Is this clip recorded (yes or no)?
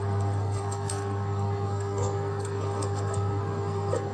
no